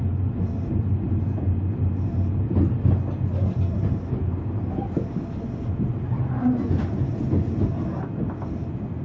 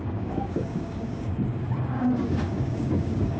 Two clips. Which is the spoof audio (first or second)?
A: second